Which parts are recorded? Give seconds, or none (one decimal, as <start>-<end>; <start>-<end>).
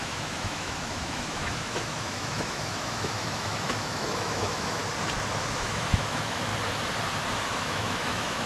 4.8-5.5; 6.5-7.6